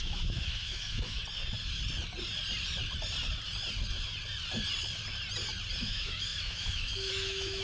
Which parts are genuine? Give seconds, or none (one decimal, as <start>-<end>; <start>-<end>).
1.2-5.8